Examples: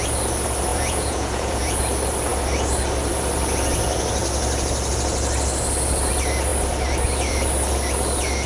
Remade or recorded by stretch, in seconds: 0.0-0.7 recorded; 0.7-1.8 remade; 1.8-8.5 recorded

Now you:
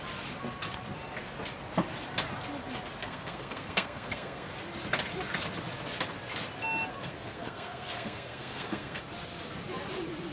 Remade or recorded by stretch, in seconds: 0.0-3.0 recorded; 3.0-4.5 remade; 4.5-6.9 recorded; 6.9-9.0 remade; 9.0-10.3 recorded

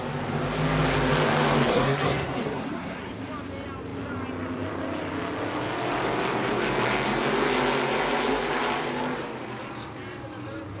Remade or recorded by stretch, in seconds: 0.0-1.7 recorded; 1.7-3.1 remade; 3.1-10.8 recorded

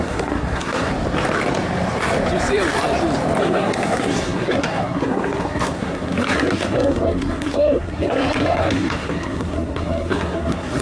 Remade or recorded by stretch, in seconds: 0.0-0.9 remade; 0.9-3.4 recorded; 3.4-10.8 remade